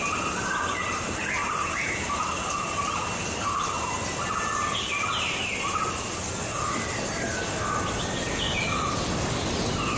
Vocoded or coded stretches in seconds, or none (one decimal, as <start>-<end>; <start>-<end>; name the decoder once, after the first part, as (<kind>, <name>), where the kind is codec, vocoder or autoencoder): 1.4-2.3 (vocoder, BigVGAN v2)